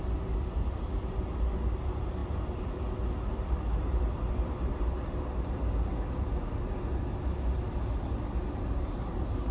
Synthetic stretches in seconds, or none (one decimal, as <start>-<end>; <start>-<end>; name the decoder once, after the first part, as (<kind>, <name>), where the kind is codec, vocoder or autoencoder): none